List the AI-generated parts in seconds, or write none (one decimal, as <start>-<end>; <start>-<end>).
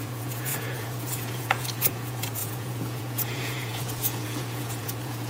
0.0-5.3